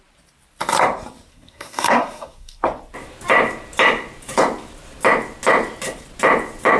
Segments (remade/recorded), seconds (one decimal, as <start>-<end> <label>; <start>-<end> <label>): 0.0-1.3 recorded; 1.3-2.6 remade; 2.6-6.8 recorded